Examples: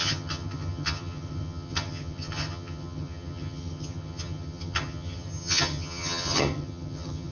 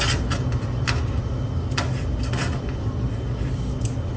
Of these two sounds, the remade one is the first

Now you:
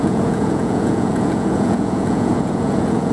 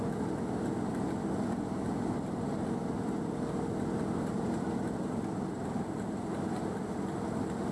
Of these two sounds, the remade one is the first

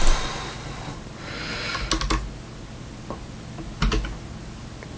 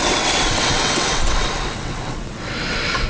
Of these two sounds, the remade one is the second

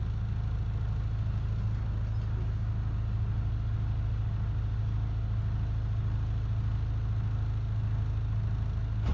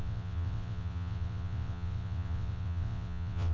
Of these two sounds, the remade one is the second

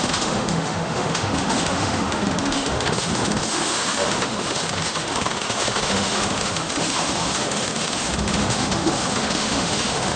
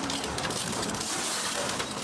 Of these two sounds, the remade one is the first